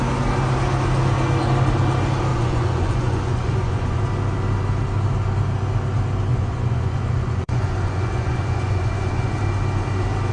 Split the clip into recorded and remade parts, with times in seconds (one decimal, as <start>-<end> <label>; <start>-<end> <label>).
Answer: 0.0-2.3 recorded; 2.3-4.0 remade; 4.0-6.3 recorded; 6.3-9.4 remade; 9.4-10.3 recorded

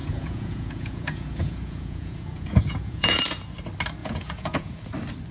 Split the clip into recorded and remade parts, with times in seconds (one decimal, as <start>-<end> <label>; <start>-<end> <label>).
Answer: 0.0-3.2 remade; 3.2-4.0 recorded; 4.0-4.8 remade; 4.8-5.3 recorded

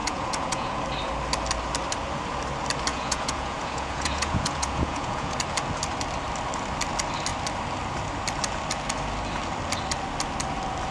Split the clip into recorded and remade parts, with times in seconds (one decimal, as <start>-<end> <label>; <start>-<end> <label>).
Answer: 0.0-0.8 remade; 0.8-2.9 recorded; 2.9-5.4 remade; 5.4-10.9 recorded

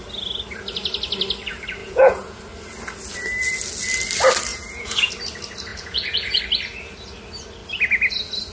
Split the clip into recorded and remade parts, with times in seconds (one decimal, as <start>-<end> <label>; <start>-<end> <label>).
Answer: 0.0-1.8 recorded; 1.8-2.4 remade; 2.4-4.5 recorded; 4.5-5.1 remade; 5.1-5.7 recorded; 5.7-6.4 remade; 6.4-8.5 recorded

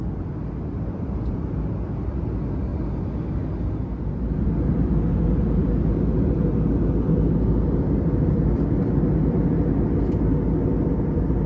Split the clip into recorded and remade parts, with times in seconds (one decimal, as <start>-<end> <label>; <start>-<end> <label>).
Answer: 0.0-11.5 recorded

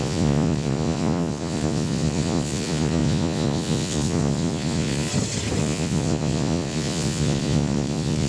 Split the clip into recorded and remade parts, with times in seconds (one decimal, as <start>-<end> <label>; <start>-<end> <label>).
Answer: 0.0-5.1 remade; 5.1-5.6 recorded; 5.6-8.3 remade